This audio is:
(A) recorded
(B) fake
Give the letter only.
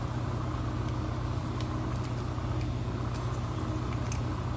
A